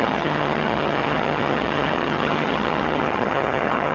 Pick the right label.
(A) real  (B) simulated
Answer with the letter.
B